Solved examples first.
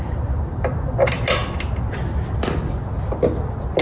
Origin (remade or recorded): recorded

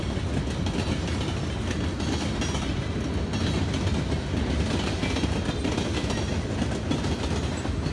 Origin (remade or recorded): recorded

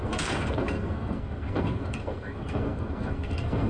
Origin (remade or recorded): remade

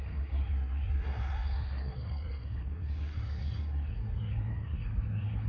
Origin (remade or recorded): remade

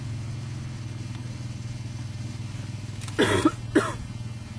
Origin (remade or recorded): recorded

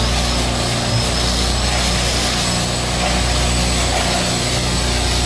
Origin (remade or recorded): recorded